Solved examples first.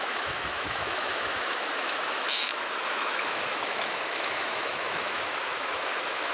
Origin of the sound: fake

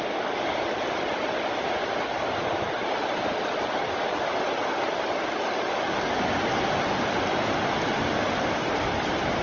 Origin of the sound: fake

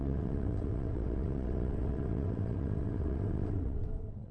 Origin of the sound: fake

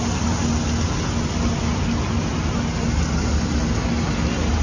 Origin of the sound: real